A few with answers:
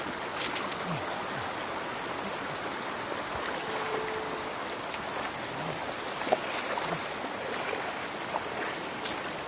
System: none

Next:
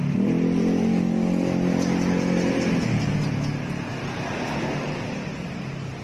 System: none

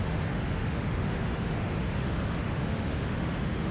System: autoencoder, DAC-VAE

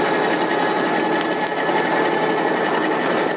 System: none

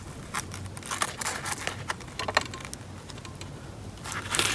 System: none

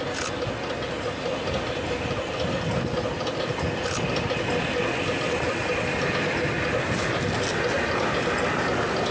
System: none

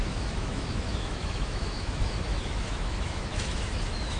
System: autoencoder, DAC-VAE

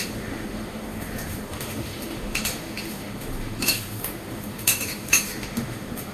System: autoencoder, DAC-VAE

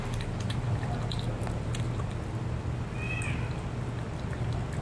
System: none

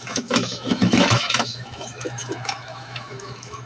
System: autoencoder, DAC-VAE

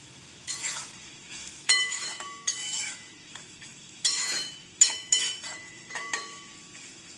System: autoencoder, DAC-VAE